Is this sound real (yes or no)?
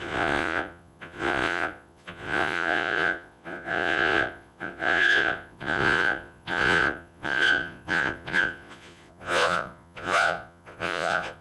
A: no